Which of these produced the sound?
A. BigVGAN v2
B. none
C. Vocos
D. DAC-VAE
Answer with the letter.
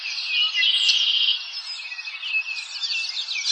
B